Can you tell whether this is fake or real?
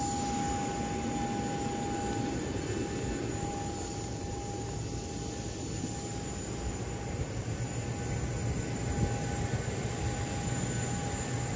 real